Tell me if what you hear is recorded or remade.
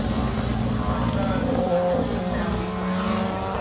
recorded